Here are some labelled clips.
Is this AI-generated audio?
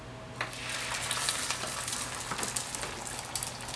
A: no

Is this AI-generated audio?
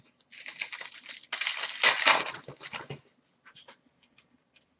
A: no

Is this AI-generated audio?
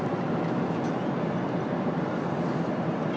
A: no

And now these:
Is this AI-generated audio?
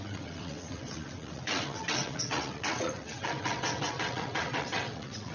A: yes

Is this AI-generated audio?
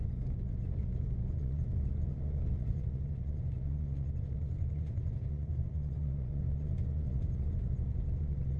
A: yes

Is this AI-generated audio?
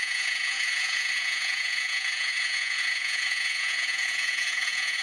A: yes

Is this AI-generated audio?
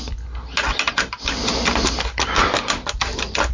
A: no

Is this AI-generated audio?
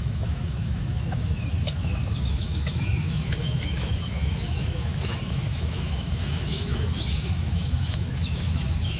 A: yes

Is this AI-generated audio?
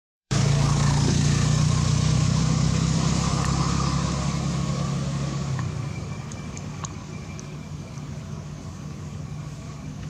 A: yes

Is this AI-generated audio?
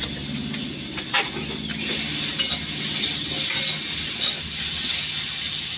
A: no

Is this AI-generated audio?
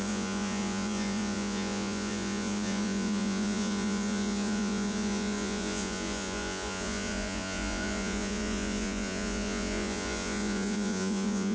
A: yes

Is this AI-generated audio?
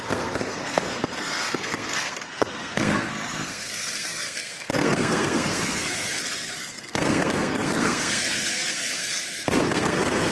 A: yes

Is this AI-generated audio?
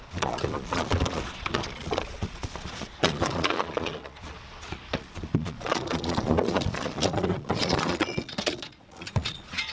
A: yes